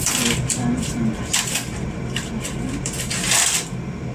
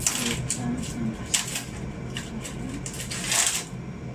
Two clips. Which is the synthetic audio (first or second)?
first